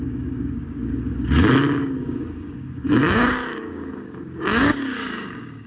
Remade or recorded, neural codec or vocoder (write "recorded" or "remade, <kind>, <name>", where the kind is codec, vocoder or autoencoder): remade, codec, DAC